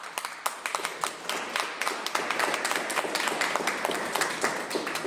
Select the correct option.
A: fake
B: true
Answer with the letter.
B